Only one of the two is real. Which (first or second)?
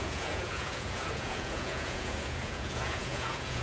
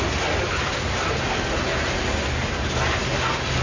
second